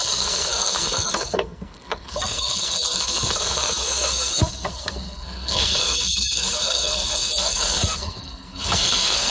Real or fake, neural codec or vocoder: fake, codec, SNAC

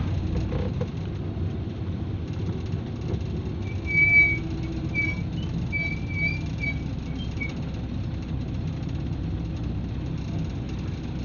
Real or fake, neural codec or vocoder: real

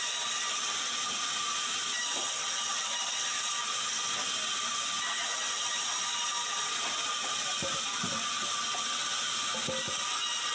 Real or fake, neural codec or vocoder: real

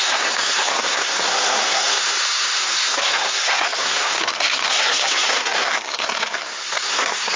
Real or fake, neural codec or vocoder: fake, codec, SNAC